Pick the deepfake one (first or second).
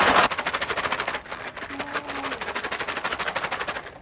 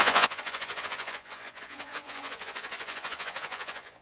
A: second